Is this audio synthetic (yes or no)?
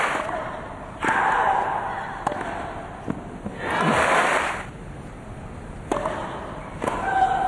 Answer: no